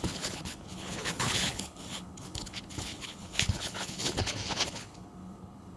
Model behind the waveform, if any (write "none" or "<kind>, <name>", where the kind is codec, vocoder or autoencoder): codec, HILCodec